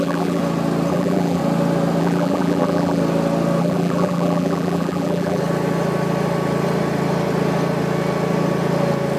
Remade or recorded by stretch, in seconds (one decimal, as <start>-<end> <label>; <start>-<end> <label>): 0.0-0.4 remade; 0.4-0.9 recorded; 0.9-1.4 remade; 1.4-2.0 recorded; 2.0-3.0 remade; 3.0-3.6 recorded; 3.6-5.4 remade; 5.4-9.2 recorded